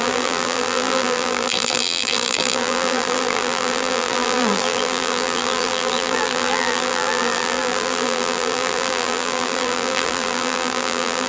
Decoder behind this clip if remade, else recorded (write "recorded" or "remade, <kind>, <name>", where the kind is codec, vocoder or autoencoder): remade, vocoder, BigVGAN v2